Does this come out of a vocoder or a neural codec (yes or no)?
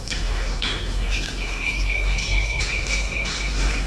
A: yes